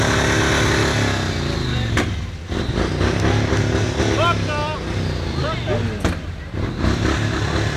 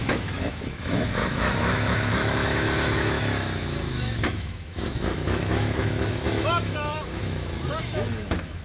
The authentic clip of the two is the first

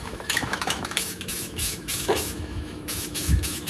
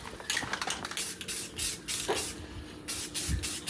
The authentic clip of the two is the second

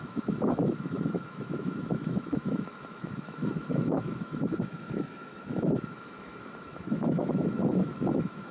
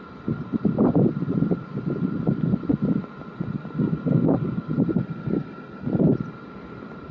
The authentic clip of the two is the second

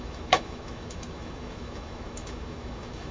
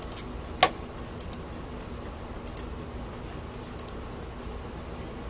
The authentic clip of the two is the second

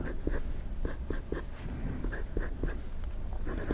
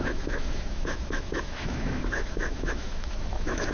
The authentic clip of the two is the first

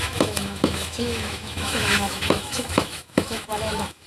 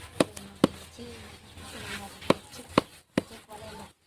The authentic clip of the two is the second